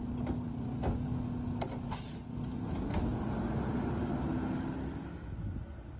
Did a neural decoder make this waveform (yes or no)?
no